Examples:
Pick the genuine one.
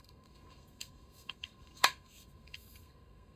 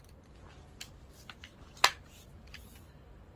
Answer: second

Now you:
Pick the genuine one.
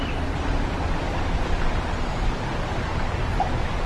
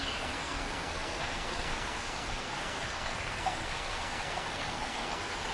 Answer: first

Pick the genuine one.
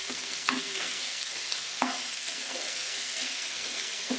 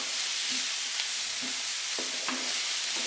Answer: second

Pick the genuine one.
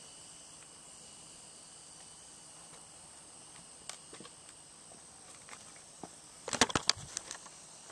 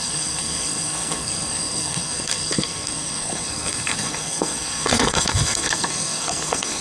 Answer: first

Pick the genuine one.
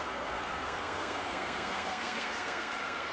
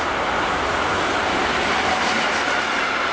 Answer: second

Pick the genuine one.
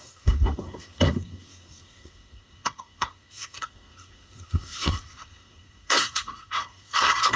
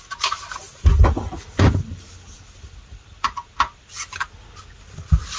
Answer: second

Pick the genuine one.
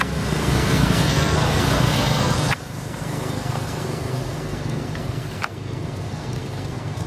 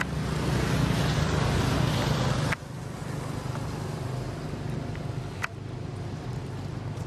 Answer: second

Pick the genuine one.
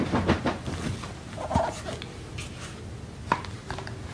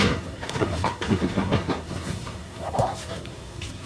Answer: first